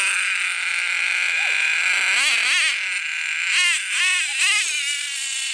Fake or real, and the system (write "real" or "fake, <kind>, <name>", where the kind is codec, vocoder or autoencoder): real